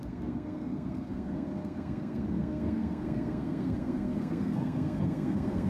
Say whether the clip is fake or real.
fake